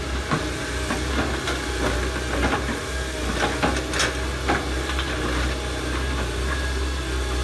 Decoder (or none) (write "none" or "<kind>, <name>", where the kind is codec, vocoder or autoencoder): none